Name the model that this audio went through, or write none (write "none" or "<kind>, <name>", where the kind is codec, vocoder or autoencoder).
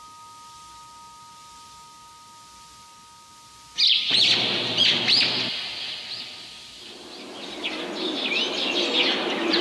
none